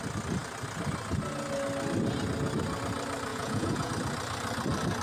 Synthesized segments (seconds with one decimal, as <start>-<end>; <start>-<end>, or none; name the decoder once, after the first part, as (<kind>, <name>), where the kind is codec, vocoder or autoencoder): 3.3-3.9 (vocoder, Vocos)